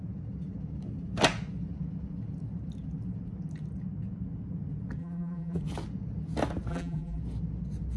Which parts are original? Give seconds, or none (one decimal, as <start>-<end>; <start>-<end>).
0.0-5.0; 5.6-6.7; 7.2-8.0

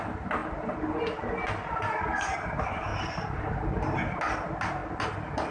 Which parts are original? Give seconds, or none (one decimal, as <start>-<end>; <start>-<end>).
0.0-2.9; 3.5-5.5

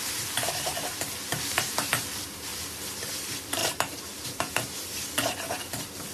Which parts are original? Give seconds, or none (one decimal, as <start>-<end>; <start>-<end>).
2.5-3.0

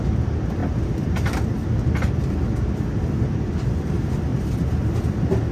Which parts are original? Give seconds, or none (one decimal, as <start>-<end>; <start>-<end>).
0.0-0.6; 3.9-4.3; 4.9-5.5

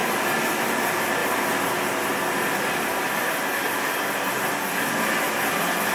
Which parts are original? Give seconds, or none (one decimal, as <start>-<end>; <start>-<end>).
0.0-5.9